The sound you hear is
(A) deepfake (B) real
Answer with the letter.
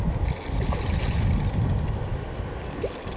B